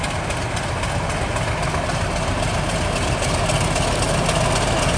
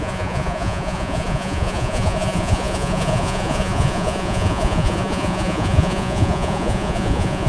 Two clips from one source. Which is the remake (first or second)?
second